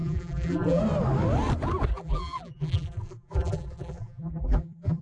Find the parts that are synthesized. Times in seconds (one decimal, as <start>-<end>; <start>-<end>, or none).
0.0-0.8; 1.9-5.0